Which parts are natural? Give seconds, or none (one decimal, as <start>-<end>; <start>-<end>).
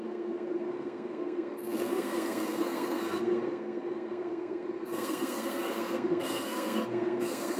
none